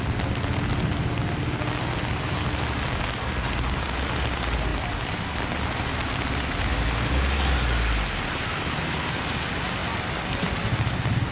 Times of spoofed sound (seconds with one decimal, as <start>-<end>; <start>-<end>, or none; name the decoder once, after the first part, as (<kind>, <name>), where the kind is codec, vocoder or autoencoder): none